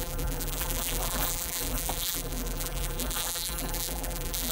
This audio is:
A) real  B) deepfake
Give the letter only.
B